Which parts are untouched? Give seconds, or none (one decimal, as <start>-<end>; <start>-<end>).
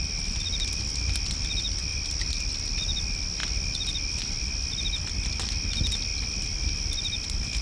0.0-7.6